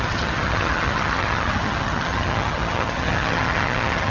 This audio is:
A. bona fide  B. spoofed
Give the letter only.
B